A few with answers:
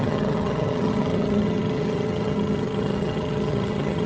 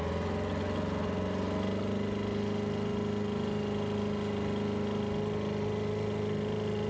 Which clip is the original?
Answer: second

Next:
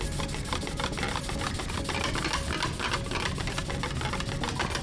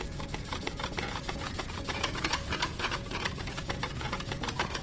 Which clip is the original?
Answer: first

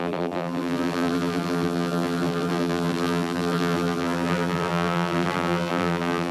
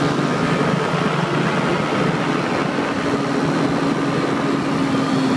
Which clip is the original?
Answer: second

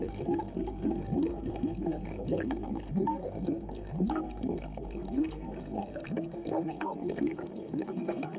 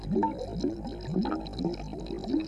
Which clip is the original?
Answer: second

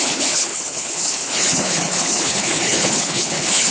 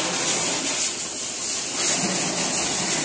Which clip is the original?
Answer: second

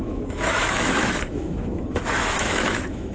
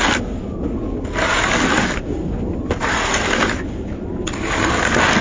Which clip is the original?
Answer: second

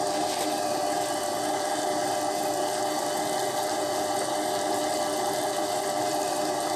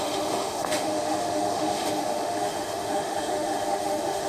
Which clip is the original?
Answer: first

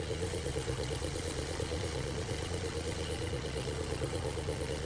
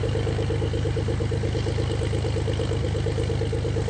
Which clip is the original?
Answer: second